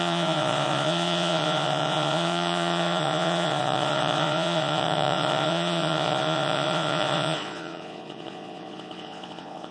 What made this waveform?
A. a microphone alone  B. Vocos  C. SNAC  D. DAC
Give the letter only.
B